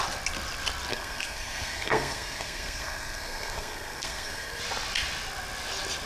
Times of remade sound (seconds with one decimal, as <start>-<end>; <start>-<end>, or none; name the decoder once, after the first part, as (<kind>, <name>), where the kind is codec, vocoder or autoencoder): 0.9-4.6 (codec, SNAC)